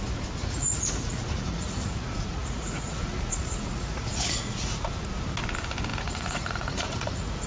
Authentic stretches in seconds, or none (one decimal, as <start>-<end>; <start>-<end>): 0.0-0.4; 4.9-5.9